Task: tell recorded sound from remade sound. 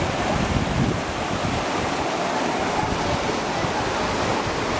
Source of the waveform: recorded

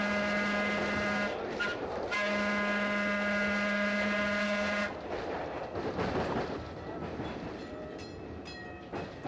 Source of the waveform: recorded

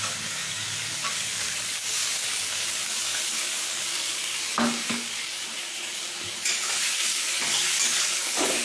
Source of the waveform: remade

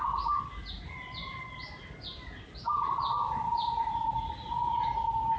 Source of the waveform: recorded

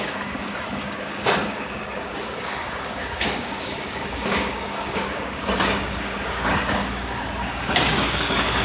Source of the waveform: remade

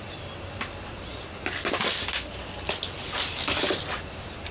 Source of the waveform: recorded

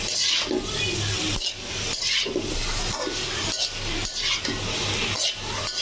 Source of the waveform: recorded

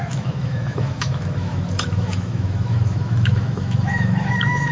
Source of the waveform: remade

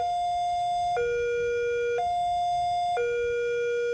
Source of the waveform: recorded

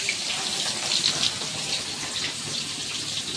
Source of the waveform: recorded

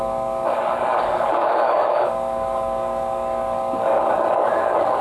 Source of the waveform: remade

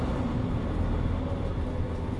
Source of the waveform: recorded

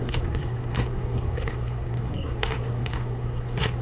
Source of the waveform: remade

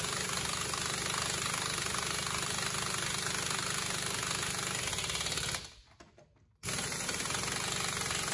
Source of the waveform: recorded